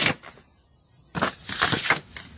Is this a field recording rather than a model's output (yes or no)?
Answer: yes